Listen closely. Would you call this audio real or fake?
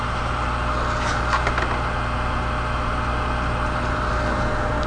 real